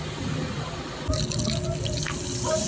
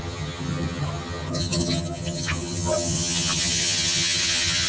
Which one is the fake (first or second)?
second